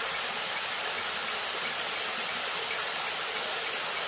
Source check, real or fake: real